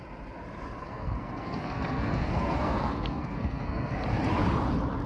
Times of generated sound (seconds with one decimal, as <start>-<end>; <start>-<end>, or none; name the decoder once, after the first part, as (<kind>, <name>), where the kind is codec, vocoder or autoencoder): 0.8-3.9 (codec, SNAC)